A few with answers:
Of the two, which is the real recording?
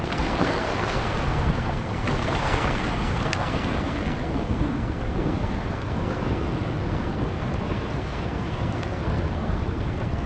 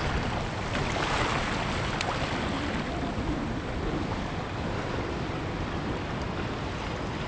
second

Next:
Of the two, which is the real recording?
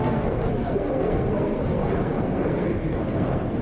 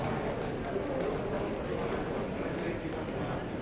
second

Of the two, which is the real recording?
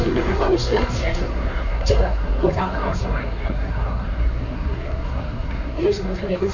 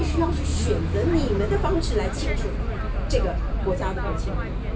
second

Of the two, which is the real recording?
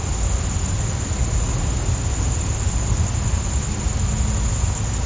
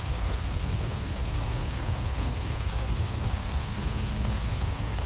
first